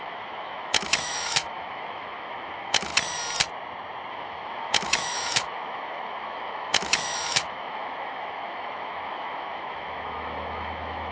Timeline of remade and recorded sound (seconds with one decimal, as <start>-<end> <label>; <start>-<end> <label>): 0.0-2.9 remade; 2.9-4.1 recorded; 4.1-11.1 remade